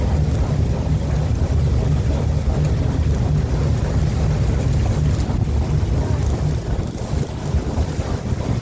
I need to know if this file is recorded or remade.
recorded